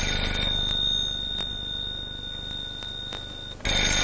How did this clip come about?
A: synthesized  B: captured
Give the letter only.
B